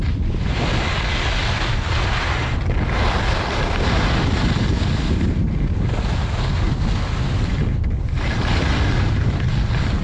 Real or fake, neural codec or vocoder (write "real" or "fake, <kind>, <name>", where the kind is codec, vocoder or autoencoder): real